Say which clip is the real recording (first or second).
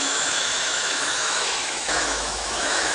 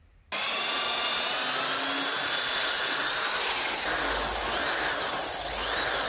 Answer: second